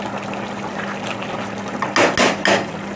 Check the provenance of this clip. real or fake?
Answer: real